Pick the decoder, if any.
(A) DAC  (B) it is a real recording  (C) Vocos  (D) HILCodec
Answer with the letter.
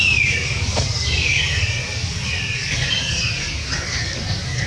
A